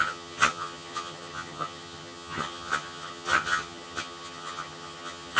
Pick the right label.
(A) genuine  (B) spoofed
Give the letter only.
B